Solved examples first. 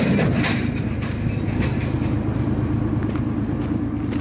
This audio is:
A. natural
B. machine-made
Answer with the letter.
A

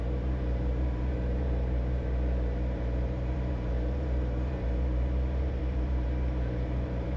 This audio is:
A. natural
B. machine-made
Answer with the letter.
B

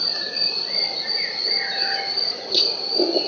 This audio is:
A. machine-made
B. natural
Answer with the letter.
B